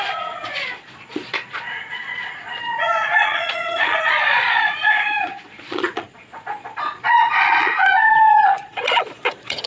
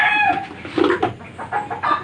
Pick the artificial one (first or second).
first